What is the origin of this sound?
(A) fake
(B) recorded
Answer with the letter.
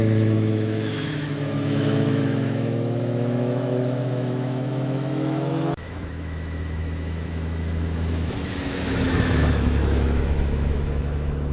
A